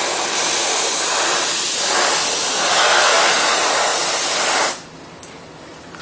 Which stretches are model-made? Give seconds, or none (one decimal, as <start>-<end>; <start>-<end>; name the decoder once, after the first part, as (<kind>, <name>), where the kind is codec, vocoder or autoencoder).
2.5-3.3 (codec, SNAC)